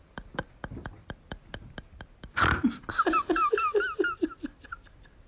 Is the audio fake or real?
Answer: real